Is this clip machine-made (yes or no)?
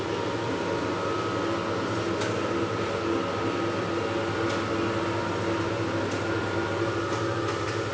no